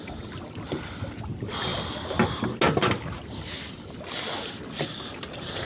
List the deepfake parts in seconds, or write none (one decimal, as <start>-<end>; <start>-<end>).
none